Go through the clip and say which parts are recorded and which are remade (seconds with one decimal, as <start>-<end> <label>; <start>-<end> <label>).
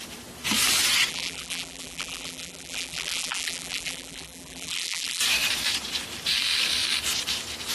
0.0-1.1 recorded; 1.1-5.2 remade; 5.2-7.7 recorded